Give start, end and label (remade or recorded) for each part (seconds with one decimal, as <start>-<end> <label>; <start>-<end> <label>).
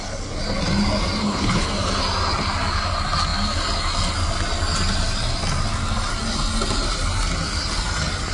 0.0-1.2 recorded; 1.2-1.7 remade; 1.7-8.3 recorded